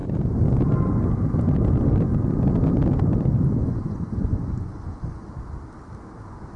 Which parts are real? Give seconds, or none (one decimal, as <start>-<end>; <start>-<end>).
0.0-3.6; 5.3-6.6